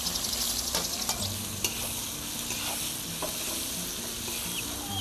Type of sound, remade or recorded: recorded